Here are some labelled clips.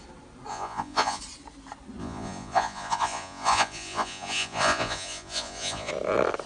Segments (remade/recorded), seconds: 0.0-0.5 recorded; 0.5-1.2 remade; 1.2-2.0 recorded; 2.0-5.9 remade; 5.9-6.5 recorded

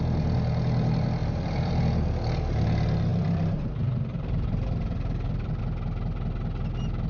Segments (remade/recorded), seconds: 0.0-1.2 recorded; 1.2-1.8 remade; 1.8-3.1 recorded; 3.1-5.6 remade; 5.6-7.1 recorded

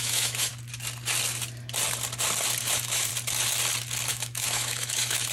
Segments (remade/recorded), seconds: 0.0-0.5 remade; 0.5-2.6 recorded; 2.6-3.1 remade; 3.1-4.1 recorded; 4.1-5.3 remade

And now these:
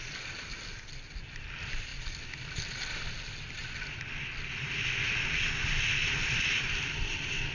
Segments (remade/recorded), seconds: 0.0-7.5 recorded

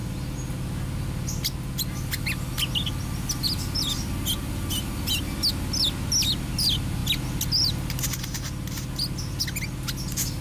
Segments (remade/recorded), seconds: 0.0-10.4 recorded

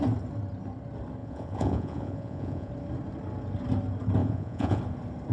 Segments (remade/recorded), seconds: 0.0-1.2 recorded; 1.2-2.7 remade; 2.7-4.2 recorded; 4.2-4.8 remade; 4.8-5.3 recorded